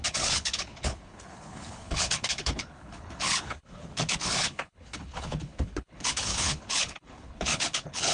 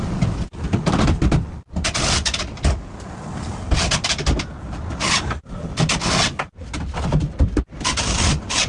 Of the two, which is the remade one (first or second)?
first